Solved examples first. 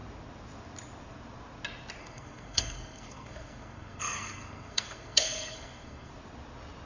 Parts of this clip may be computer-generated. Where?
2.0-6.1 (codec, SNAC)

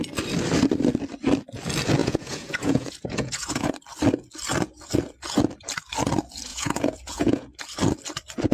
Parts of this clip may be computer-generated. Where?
2.0-3.7 (vocoder, Vocos); 6.5-7.6

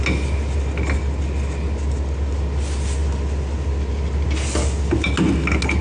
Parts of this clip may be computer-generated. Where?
none

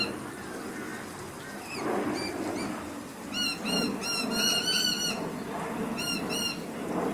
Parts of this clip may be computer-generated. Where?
none

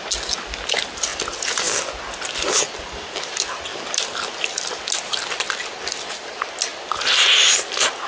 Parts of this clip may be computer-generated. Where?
none

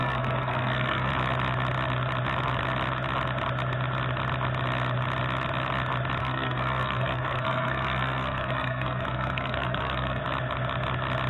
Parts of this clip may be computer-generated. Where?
0.0-1.1 (codec, SNAC); 6.2-10.2